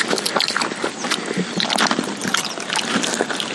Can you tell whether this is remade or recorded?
recorded